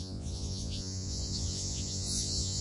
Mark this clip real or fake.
fake